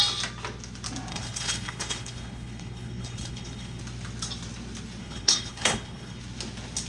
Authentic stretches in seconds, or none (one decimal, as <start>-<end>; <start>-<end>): 0.0-1.1; 3.8-5.0; 6.2-6.9